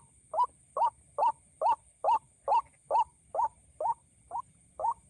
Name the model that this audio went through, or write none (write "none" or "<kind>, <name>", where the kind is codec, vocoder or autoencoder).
none